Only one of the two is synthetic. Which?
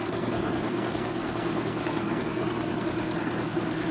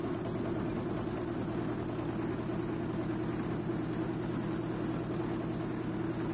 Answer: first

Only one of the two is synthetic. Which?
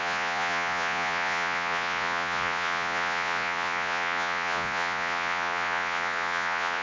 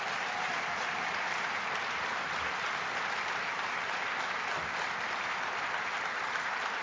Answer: first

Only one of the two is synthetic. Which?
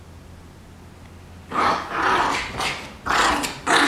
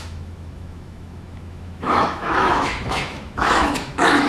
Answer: second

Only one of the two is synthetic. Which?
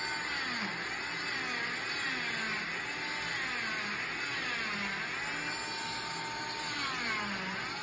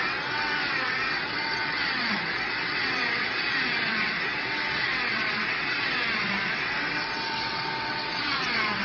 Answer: second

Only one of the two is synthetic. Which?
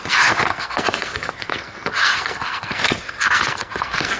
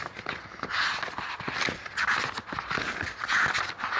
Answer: first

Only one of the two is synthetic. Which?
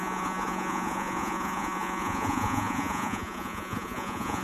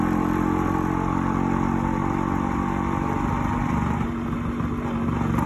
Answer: first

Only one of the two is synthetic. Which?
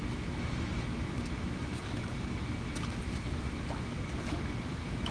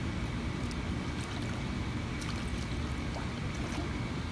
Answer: first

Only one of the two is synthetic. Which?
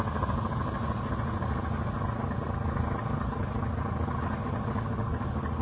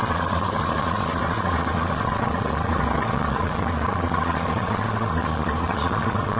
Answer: second